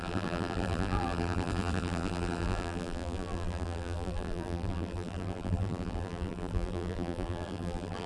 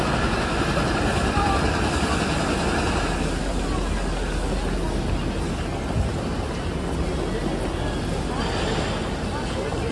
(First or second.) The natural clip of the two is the second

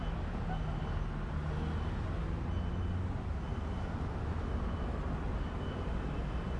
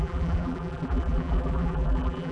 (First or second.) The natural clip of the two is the first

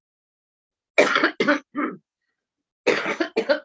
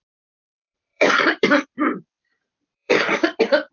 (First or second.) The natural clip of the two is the first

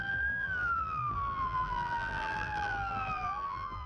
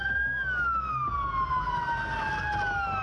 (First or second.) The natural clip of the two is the second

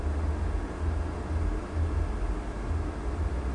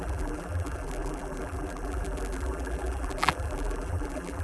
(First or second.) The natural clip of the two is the first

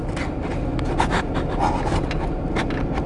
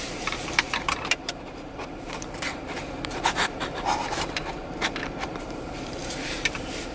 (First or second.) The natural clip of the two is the first